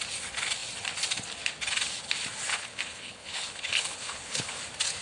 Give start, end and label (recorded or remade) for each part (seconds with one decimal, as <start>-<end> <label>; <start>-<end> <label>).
0.0-2.5 recorded; 2.5-4.6 remade; 4.6-5.0 recorded